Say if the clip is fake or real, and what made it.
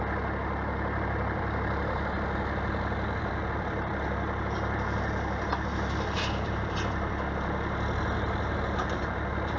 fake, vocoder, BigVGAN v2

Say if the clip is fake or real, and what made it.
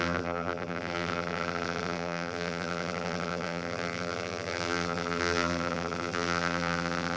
fake, vocoder, BigVGAN v2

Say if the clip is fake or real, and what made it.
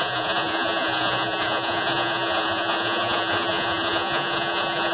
fake, vocoder, Vocos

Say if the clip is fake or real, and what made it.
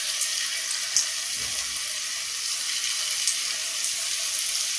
real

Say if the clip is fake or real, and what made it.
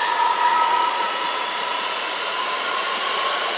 fake, vocoder, Vocos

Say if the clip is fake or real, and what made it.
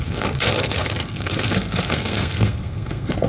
fake, codec, SNAC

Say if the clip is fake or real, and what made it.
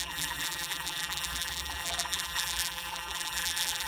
fake, vocoder, BigVGAN v2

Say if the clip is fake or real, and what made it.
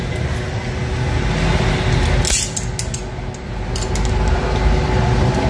real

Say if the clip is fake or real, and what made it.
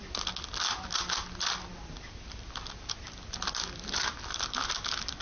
real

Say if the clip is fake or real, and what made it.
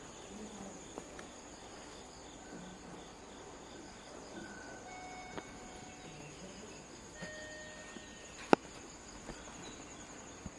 real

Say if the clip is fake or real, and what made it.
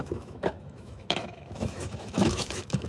fake, autoencoder, DAC-VAE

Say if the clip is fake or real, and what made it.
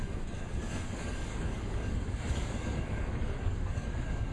fake, codec, DAC